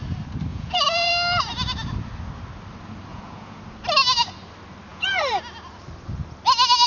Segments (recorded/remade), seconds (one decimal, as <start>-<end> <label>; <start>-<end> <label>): 0.0-0.5 recorded; 0.5-1.1 remade; 1.1-3.1 recorded; 3.1-3.6 remade; 3.6-4.9 recorded; 4.9-5.4 remade; 5.4-6.9 recorded